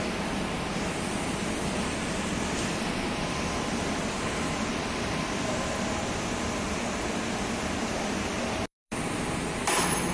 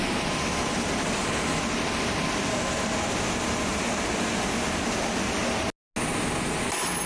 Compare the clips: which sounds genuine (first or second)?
second